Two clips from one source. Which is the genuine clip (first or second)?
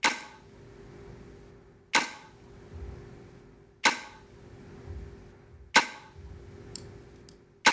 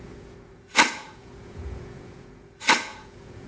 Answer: first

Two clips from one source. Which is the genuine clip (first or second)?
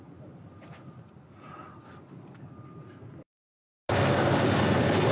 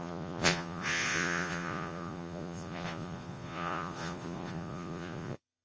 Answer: first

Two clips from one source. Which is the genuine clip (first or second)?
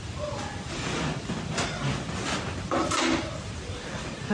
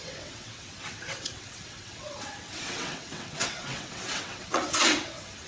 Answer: first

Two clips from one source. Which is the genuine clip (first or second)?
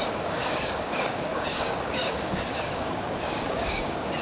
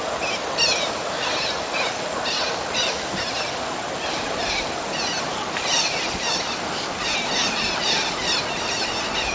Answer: second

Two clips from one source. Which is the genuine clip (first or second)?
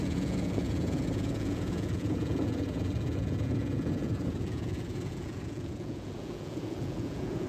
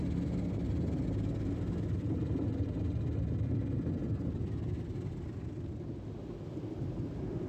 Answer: second